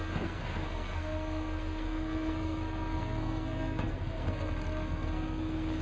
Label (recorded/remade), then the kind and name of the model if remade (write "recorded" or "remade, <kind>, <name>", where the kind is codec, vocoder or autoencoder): remade, codec, SNAC